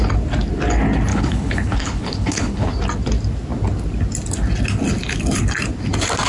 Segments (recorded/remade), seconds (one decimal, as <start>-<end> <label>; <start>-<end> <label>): 0.0-1.1 recorded; 1.1-2.7 remade; 2.7-6.3 recorded